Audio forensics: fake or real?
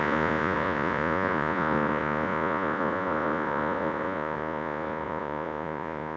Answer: fake